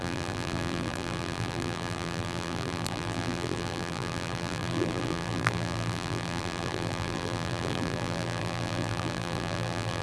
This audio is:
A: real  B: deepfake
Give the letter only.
B